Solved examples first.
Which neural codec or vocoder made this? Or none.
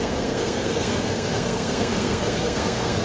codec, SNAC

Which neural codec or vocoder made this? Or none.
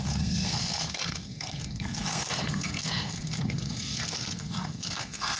codec, SNAC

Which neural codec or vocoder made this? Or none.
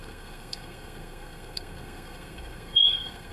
codec, SNAC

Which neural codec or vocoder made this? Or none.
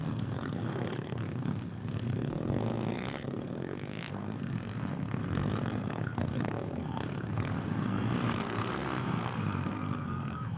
codec, SNAC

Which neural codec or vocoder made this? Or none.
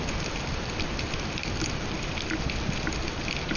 none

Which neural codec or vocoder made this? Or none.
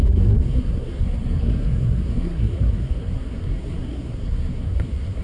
codec, SNAC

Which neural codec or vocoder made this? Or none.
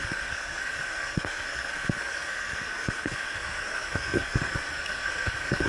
codec, SNAC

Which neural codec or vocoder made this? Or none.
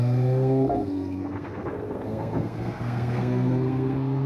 codec, SNAC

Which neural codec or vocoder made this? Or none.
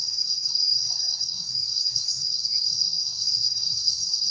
codec, SNAC